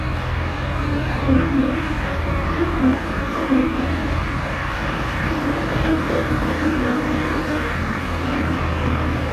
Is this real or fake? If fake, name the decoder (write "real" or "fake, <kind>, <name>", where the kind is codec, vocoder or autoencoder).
fake, codec, DAC